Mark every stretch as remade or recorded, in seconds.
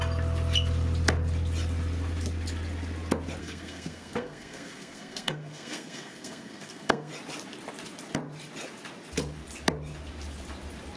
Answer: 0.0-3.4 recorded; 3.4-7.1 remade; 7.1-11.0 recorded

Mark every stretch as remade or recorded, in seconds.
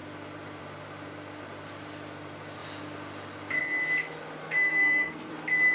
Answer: 0.0-4.4 recorded; 4.4-5.3 remade; 5.3-5.7 recorded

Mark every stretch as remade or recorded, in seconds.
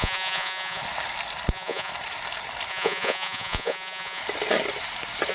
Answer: 0.0-0.8 remade; 0.8-1.5 recorded; 1.5-1.9 remade; 1.9-2.7 recorded; 2.7-4.2 remade; 4.2-5.3 recorded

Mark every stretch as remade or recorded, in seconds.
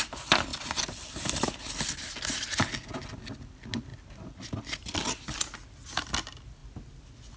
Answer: 0.0-7.4 recorded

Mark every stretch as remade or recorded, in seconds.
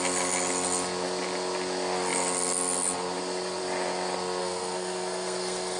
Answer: 0.0-4.4 recorded; 4.4-5.8 remade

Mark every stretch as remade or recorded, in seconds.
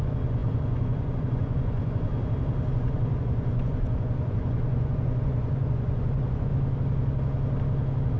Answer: 0.0-2.1 remade; 2.1-2.7 recorded; 2.7-6.5 remade; 6.5-8.2 recorded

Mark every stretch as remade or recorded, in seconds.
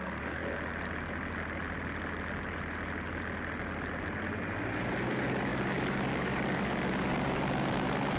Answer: 0.0-0.4 remade; 0.4-5.1 recorded; 5.1-8.2 remade